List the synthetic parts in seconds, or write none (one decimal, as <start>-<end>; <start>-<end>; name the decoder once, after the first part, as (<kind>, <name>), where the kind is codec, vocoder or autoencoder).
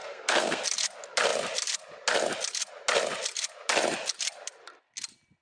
0.0-0.6 (codec, SNAC)